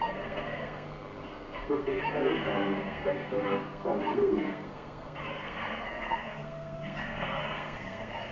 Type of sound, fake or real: fake